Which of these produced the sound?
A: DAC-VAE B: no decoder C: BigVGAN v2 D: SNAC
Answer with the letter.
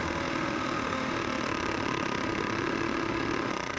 A